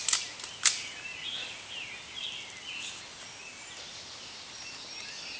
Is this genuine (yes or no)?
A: yes